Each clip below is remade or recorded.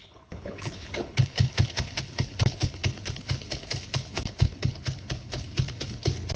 remade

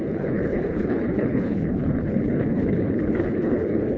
remade